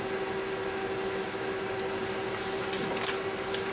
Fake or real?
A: real